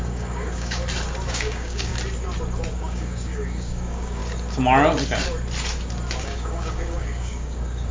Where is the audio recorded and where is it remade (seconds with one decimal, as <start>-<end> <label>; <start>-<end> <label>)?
0.0-0.8 remade; 0.8-1.3 recorded; 1.3-1.9 remade; 1.9-2.7 recorded; 2.7-4.2 remade; 4.2-6.2 recorded; 6.2-7.9 remade